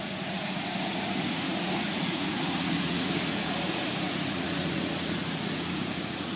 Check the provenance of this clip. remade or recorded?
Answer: remade